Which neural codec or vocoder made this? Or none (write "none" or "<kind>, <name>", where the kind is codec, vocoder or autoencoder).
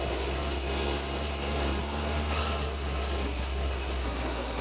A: codec, SNAC